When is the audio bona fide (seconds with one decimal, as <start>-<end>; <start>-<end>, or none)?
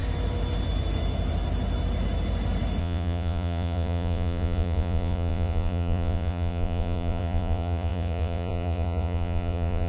0.0-2.8